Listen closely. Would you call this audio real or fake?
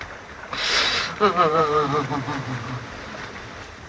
fake